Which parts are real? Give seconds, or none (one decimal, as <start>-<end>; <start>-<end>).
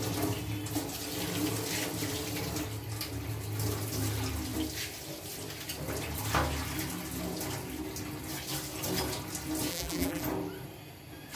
0.0-9.7; 10.2-11.4